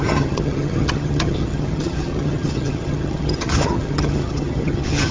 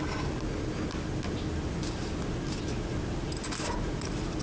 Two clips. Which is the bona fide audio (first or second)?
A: second